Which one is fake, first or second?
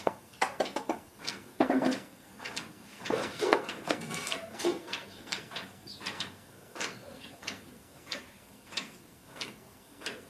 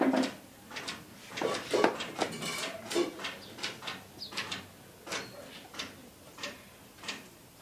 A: first